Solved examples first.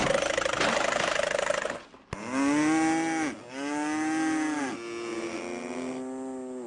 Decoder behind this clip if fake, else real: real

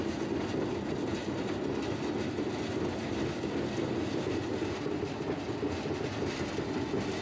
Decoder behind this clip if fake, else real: real